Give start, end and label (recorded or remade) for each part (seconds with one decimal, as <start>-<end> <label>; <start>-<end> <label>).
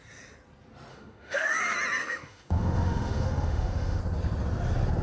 0.0-0.9 recorded; 0.9-1.6 remade; 1.6-2.0 recorded; 2.0-4.0 remade; 4.0-5.0 recorded